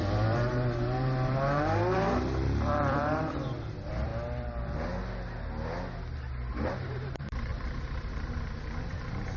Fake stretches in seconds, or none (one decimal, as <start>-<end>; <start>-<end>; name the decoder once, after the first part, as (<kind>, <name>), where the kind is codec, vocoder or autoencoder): 0.0-4.1 (vocoder, BigVGAN v2); 6.5-9.4